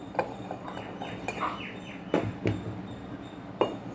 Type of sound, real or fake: real